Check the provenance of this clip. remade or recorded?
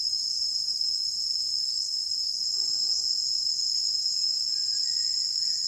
recorded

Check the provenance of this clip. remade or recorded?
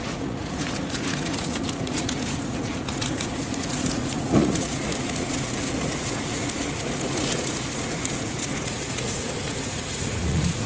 remade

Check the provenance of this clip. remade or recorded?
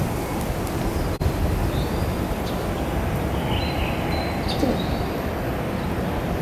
recorded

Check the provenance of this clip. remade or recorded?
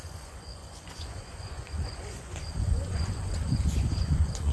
remade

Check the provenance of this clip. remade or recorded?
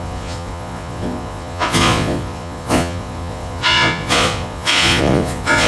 remade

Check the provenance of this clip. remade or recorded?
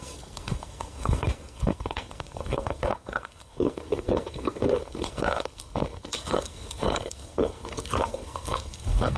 remade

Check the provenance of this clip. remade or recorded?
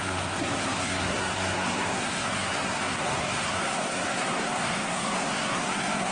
remade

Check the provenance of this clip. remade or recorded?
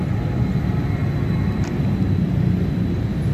recorded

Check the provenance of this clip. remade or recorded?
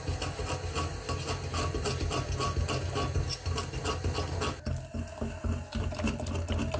recorded